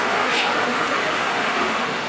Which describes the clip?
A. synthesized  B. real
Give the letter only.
A